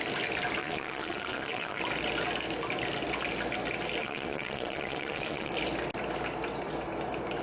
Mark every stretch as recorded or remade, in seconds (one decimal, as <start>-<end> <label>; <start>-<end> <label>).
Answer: 0.0-0.6 recorded; 0.6-1.8 remade; 1.8-4.0 recorded; 4.0-5.5 remade; 5.5-7.4 recorded